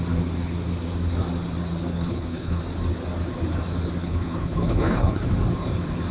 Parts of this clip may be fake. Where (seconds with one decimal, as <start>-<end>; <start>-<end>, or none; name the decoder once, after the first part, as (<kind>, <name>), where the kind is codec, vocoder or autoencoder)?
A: 1.9-2.6 (codec, HILCodec); 4.0-5.3